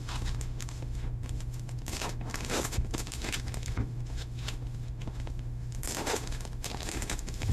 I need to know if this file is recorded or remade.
remade